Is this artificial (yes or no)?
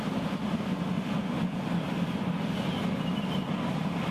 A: no